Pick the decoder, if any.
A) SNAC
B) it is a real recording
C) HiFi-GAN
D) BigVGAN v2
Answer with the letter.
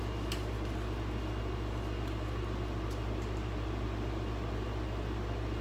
B